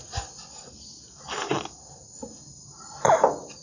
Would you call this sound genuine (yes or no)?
yes